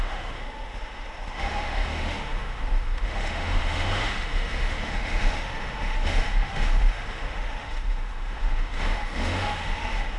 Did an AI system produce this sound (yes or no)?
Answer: yes